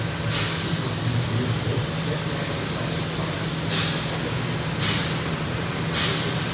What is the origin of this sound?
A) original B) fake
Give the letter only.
A